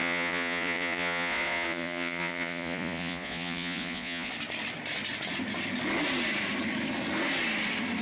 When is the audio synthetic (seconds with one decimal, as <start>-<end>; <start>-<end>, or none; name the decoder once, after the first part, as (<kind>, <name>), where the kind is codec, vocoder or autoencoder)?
0.0-4.3 (vocoder, Vocos)